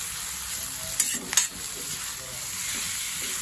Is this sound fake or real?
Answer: real